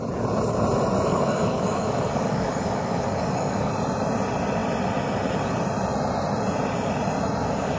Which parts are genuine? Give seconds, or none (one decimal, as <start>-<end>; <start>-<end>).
0.0-1.1; 3.7-7.8